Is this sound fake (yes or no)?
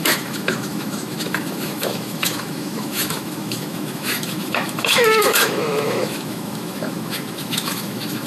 yes